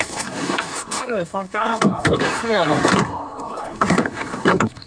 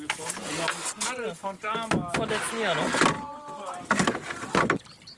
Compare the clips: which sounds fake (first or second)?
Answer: first